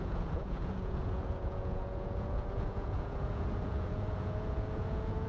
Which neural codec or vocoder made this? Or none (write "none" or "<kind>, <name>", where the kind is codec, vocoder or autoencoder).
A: vocoder, Vocos